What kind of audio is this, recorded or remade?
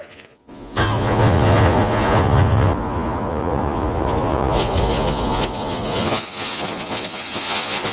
remade